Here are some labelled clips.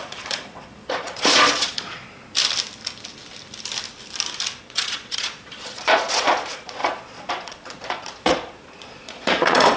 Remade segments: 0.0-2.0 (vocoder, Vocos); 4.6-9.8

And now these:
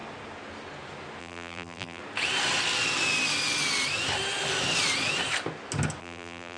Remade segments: 1.2-2.0 (vocoder, BigVGAN v2); 6.0-6.6

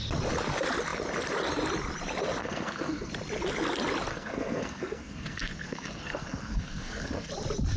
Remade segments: 2.4-3.1 (codec, SNAC); 4.1-7.3

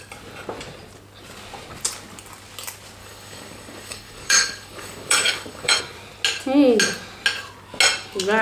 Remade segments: 3.0-5.8 (codec, DAC)

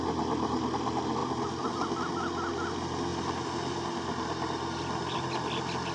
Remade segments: none

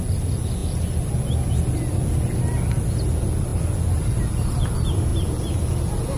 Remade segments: none